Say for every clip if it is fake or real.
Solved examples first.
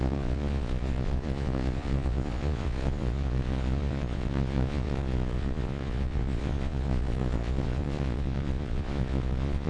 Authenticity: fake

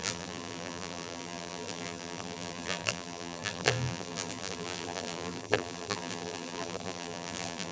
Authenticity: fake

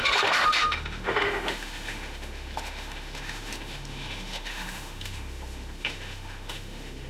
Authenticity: fake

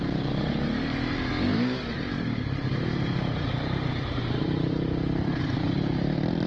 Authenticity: fake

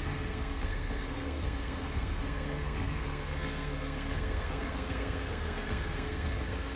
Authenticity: fake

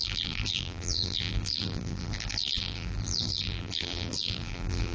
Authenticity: fake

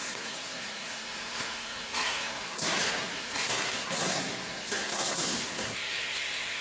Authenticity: fake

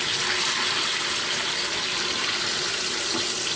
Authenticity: real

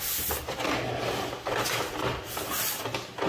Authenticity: real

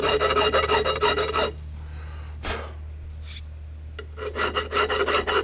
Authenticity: real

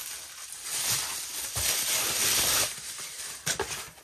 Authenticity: real